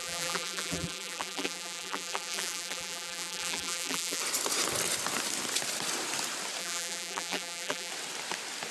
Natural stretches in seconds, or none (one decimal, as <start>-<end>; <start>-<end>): 4.2-6.6; 7.9-8.7